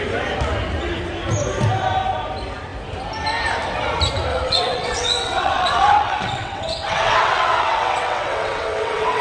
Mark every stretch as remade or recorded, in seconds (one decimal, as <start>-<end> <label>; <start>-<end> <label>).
0.0-4.3 recorded; 4.3-9.2 remade